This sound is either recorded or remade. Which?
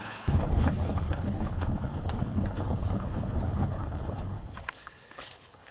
remade